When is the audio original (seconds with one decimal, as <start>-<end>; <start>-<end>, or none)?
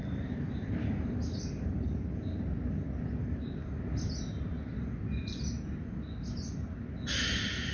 1.7-7.7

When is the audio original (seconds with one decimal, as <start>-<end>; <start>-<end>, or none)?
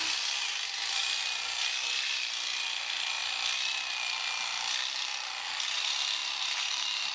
0.0-3.2; 4.2-6.2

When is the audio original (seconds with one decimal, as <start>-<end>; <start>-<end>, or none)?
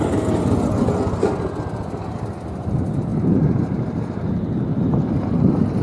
0.0-3.1; 5.2-5.8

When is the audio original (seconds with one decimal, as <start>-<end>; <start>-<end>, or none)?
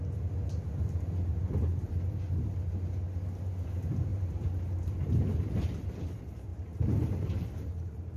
0.0-1.3; 1.9-4.1; 5.6-6.5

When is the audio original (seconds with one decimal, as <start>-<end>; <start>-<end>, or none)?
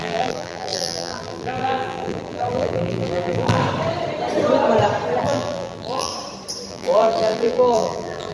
3.6-5.2; 6.1-6.7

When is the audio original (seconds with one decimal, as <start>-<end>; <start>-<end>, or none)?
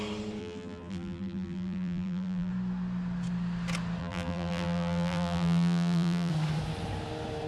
0.0-0.4; 2.5-4.0; 6.3-7.5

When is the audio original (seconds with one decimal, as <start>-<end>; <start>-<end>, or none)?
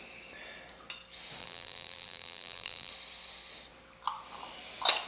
0.0-1.4; 2.9-5.1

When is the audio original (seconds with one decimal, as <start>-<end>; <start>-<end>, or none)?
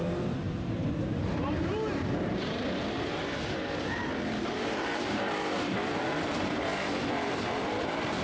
none